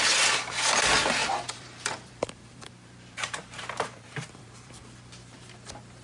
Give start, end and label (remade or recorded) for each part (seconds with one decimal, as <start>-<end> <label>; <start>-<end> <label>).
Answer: 0.0-1.2 recorded; 1.2-4.8 remade; 4.8-6.0 recorded